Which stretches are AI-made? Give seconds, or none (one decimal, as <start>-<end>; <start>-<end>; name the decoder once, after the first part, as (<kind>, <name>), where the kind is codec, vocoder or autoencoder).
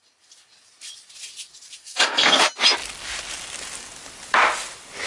1.8-2.4 (codec, SNAC)